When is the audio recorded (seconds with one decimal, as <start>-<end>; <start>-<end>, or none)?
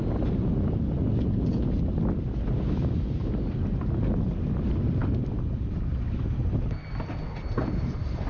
0.0-8.3